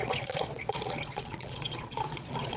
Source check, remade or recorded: remade